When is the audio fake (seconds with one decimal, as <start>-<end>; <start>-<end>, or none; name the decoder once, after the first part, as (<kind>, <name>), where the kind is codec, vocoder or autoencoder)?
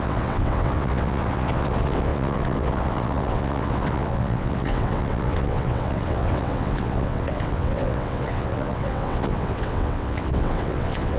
0.0-11.2 (vocoder, WaveNeXt)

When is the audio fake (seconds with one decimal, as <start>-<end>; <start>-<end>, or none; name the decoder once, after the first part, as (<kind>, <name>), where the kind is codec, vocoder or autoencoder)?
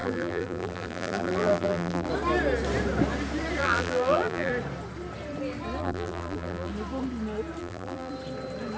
0.0-2.1 (vocoder, BigVGAN v2); 3.6-4.5; 5.8-6.7; 7.6-8.1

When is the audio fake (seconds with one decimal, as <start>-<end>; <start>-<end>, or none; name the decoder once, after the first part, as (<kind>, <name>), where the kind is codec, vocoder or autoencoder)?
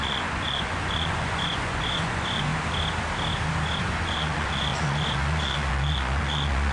0.0-2.5 (vocoder, Vocos); 3.8-6.7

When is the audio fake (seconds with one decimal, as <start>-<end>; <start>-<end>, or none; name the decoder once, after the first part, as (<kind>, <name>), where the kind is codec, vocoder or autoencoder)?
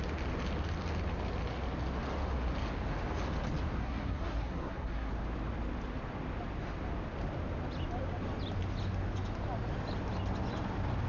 3.8-5.1 (codec, SNAC)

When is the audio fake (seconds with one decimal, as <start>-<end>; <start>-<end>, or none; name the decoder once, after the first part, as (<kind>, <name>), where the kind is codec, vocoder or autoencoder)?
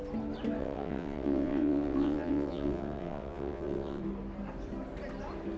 0.6-4.0 (vocoder, WaveNeXt)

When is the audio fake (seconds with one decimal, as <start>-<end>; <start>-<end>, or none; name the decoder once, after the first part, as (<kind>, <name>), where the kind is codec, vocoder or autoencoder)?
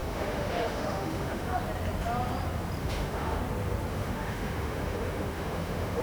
0.0-1.6 (autoencoder, DAC-VAE); 2.8-3.4; 3.9-6.0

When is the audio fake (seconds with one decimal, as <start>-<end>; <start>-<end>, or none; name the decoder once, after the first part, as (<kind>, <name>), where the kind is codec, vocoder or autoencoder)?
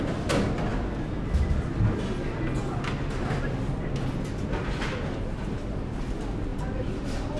none